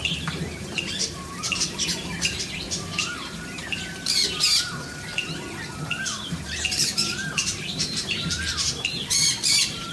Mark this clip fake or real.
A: fake